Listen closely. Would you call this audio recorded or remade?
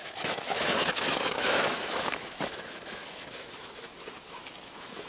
remade